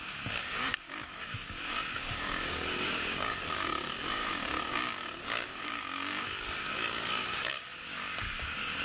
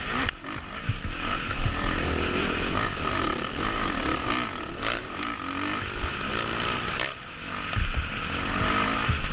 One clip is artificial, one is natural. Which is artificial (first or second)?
first